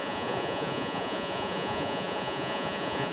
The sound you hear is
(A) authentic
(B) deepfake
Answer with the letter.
B